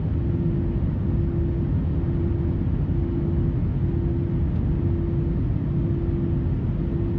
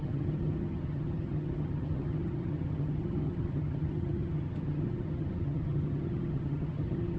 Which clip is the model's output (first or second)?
second